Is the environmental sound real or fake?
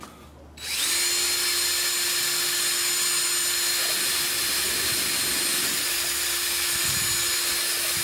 real